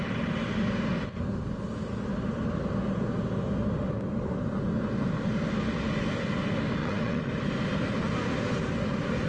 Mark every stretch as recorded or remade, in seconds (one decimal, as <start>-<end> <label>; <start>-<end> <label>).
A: 0.0-6.8 recorded; 6.8-7.3 remade; 7.3-9.3 recorded